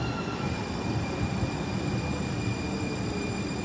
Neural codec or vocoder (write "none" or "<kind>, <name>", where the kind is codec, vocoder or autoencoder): none